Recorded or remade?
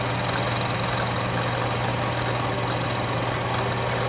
recorded